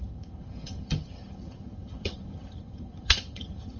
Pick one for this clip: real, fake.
fake